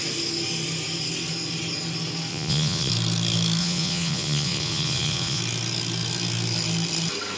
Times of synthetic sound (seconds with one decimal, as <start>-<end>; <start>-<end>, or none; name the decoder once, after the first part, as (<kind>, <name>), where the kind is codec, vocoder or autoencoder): 2.3-2.9 (vocoder, Vocos); 3.6-5.4